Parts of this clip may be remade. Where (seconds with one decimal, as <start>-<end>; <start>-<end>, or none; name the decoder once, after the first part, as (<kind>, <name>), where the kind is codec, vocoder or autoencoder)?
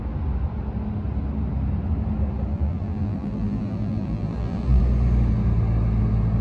2.5-4.8 (vocoder, BigVGAN v2)